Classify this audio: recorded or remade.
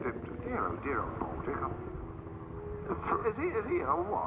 recorded